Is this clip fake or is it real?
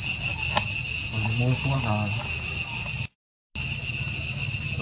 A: real